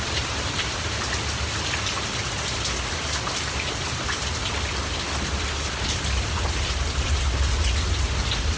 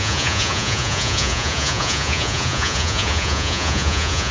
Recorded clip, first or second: first